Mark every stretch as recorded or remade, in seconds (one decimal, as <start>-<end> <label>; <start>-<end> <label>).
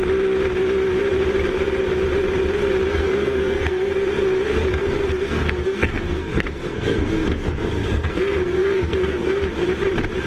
0.0-2.9 recorded; 2.9-3.9 remade; 3.9-4.7 recorded; 4.7-9.4 remade; 9.4-10.3 recorded